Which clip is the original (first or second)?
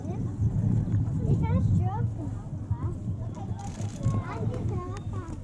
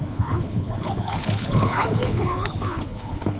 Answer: first